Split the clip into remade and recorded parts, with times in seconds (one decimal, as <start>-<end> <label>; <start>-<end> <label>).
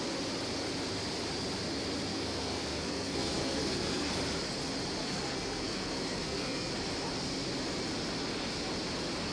0.0-2.1 recorded; 2.1-4.1 remade; 4.1-5.0 recorded; 5.0-6.7 remade; 6.7-9.3 recorded